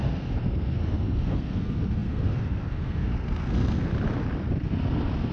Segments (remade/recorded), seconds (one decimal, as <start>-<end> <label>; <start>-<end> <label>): 0.0-3.9 remade; 3.9-5.3 recorded